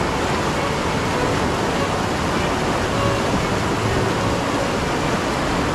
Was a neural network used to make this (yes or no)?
no